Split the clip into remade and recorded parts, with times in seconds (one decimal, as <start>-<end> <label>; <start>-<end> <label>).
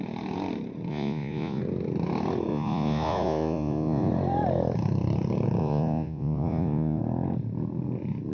0.0-0.9 recorded; 0.9-1.6 remade; 1.6-2.5 recorded; 2.5-4.1 remade; 4.1-5.6 recorded; 5.6-7.0 remade; 7.0-8.3 recorded